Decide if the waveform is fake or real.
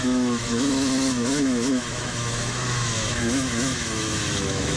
fake